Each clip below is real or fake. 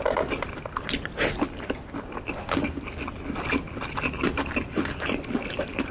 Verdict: real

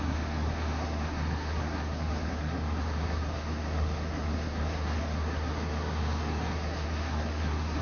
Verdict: fake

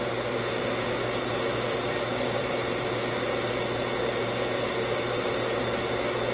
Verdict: real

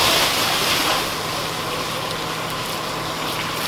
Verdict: real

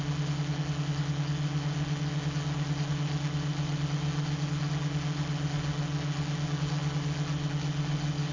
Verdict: real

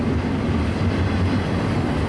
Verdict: real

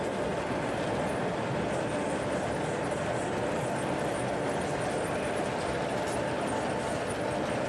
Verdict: real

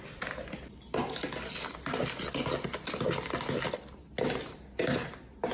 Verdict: real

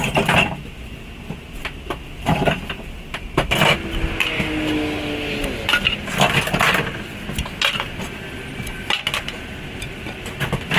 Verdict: real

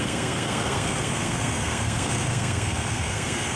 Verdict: fake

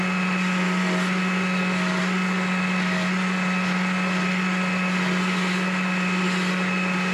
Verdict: real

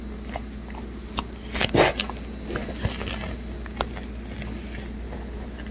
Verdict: real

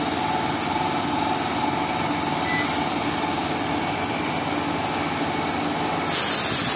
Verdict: real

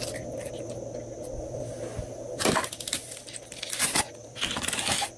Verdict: real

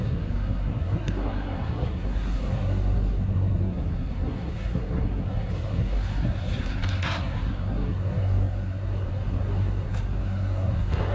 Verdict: fake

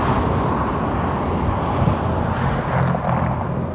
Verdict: real